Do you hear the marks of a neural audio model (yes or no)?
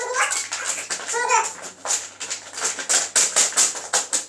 no